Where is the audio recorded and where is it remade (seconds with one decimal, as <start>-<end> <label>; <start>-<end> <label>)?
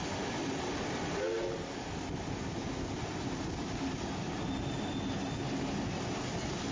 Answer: 0.0-6.7 recorded